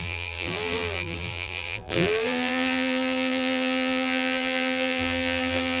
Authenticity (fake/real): fake